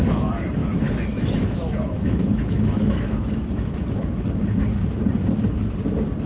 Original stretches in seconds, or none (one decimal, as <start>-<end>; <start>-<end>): 0.0-0.6; 4.4-6.3